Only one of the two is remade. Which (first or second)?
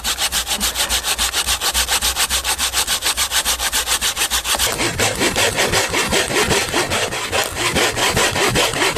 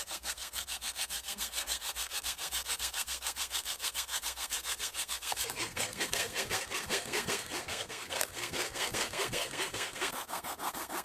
second